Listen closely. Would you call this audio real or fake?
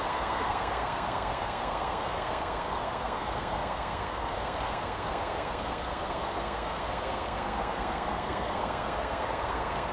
fake